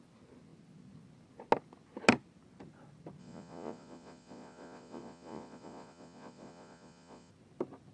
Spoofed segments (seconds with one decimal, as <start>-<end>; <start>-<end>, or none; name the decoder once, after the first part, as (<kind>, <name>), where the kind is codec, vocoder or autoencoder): 3.2-7.3 (vocoder, Vocos)

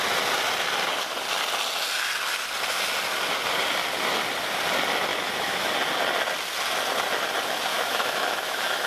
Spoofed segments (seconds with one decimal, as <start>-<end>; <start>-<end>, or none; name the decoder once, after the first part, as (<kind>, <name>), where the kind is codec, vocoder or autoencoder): 5.1-5.7 (autoencoder, DAC-VAE); 7.7-8.9

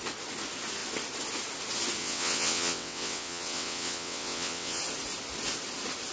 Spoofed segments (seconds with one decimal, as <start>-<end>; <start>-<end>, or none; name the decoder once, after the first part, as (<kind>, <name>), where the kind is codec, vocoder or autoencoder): 2.0-4.8 (vocoder, WaveNeXt)

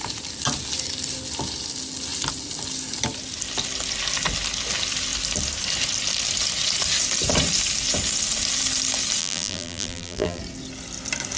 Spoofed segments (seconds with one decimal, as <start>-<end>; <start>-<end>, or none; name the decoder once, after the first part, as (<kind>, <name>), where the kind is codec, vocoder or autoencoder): 9.2-10.4 (vocoder, BigVGAN v2)

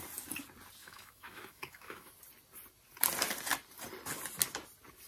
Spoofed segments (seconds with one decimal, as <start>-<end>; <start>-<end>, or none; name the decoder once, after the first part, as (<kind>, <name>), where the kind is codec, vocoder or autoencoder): 0.8-2.1 (autoencoder, DAC-VAE)

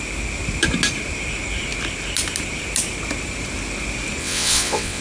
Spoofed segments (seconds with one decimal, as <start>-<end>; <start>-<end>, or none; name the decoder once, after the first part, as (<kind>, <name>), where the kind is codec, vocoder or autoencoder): 4.2-5.0 (vocoder, WaveNeXt)